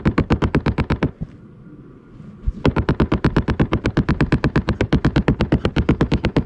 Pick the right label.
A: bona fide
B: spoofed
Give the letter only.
A